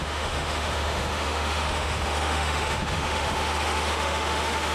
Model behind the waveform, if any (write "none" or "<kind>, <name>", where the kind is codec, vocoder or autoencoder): autoencoder, DAC-VAE